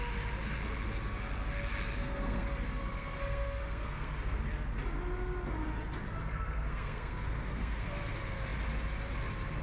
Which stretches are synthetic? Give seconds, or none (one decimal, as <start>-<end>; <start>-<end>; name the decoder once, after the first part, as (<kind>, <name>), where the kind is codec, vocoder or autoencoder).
2.0-4.4 (codec, SNAC); 6.2-7.9